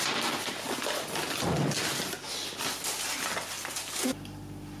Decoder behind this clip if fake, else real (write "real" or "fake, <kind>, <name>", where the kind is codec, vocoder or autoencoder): real